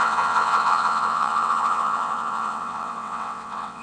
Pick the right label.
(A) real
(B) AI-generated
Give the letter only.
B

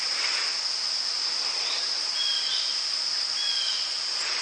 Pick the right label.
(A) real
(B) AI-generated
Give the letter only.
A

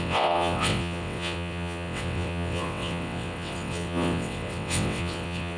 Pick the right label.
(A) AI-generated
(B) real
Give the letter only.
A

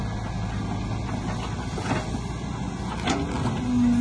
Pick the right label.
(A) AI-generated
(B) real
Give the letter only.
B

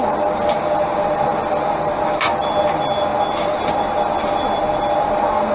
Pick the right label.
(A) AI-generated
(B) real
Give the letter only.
B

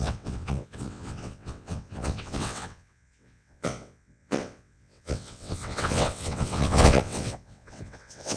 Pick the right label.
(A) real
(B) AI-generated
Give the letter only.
B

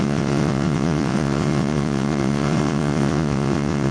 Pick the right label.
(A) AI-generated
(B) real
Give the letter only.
A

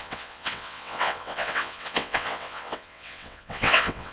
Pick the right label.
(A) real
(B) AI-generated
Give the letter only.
B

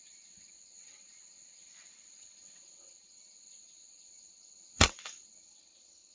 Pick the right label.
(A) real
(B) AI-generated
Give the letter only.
B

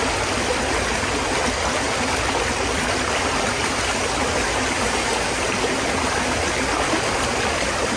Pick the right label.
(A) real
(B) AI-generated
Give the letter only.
A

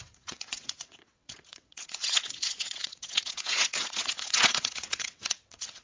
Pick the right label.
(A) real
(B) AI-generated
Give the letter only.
B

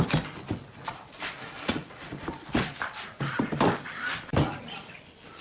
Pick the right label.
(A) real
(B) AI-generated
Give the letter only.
A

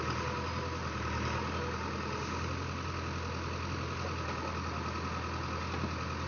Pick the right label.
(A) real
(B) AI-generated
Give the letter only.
A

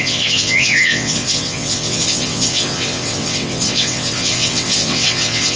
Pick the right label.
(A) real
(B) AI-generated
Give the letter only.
B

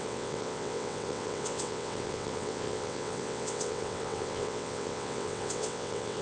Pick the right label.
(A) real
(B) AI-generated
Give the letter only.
B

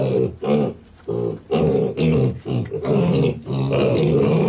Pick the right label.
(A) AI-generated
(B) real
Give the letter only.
B